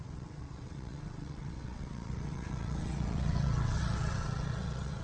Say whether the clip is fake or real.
fake